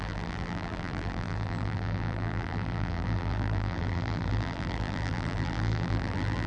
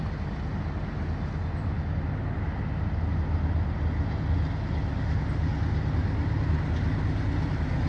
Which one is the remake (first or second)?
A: first